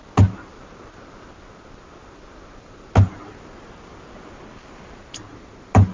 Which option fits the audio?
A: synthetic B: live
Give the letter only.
B